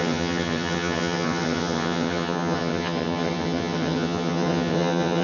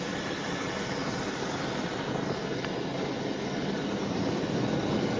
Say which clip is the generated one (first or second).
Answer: first